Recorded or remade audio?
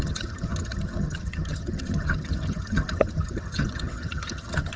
remade